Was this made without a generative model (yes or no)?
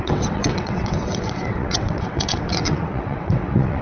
no